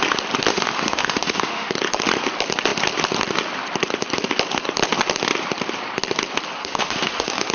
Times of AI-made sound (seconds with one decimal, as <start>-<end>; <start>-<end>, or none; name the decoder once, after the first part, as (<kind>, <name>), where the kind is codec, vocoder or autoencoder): 0.5-1.7 (autoencoder, DAC-VAE); 6.6-7.5